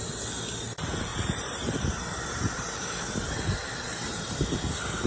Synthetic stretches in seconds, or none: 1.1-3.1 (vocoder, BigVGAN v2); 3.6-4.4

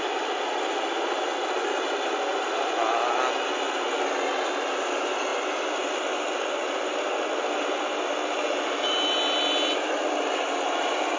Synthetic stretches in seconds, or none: none

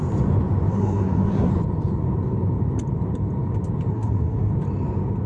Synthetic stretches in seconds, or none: 0.7-1.5 (codec, SNAC); 3.9-4.5

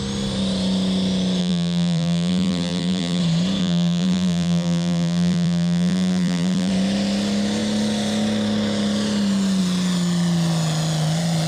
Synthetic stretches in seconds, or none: 1.4-3.2 (vocoder, BigVGAN v2); 3.6-6.7